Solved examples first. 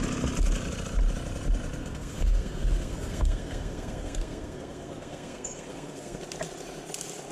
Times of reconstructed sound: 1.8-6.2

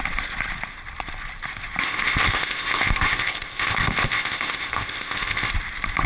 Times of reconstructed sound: 1.8-5.5

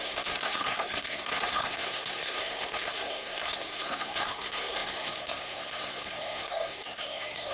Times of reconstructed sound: 0.0-7.5

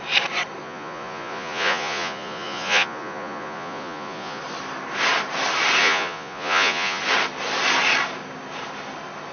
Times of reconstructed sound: 0.6-4.4; 5.8-7.0

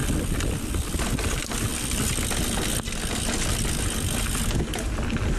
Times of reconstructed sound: none